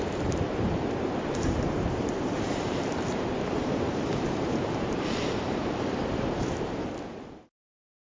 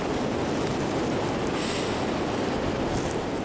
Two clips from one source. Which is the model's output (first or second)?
first